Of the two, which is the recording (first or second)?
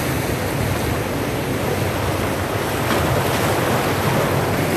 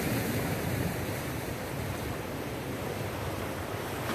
first